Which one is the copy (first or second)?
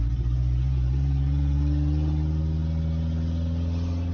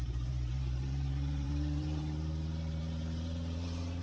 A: second